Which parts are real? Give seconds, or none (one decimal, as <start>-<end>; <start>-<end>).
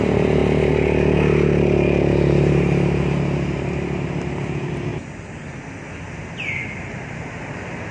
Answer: 0.0-7.9